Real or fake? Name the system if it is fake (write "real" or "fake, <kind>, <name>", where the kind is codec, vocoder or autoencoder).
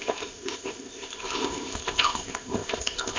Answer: fake, codec, ZipCodec